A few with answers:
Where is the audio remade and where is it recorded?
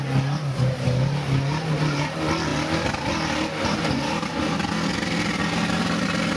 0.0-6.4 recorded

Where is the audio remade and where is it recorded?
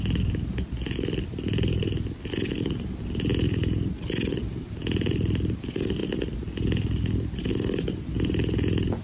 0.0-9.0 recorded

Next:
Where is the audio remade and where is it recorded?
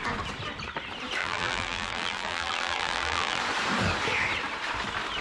0.0-1.2 recorded; 1.2-3.4 remade; 3.4-5.2 recorded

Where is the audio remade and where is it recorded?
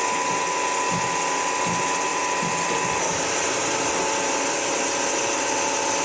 0.0-2.1 recorded; 2.1-5.2 remade; 5.2-6.0 recorded